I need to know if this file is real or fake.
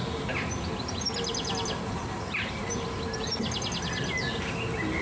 real